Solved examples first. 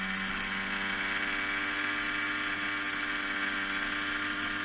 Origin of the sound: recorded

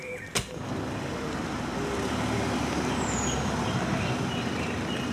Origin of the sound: recorded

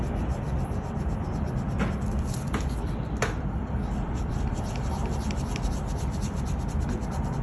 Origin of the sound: remade